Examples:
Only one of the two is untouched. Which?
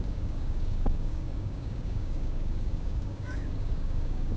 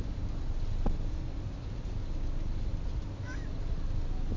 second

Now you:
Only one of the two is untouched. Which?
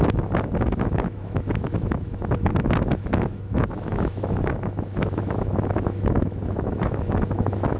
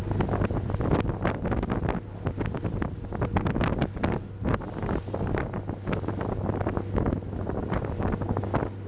second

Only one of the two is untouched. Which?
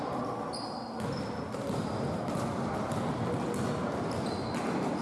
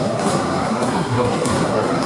first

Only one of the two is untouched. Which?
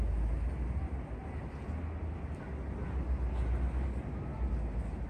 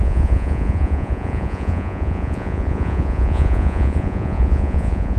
first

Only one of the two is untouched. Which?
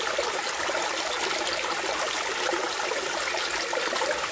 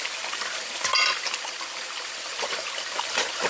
first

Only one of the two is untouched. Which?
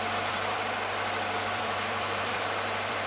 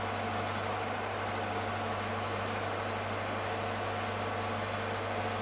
second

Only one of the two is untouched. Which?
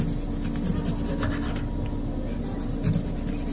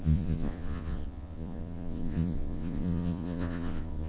first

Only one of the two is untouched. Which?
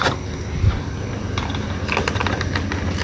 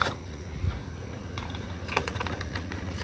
first